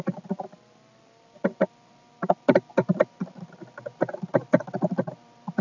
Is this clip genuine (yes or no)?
yes